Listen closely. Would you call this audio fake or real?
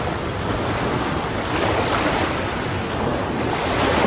real